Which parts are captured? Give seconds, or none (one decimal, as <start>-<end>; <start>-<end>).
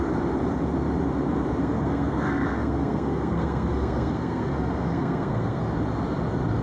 0.0-1.6; 5.6-6.6